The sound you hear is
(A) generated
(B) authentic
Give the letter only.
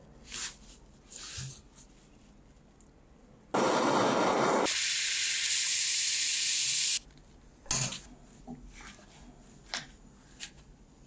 B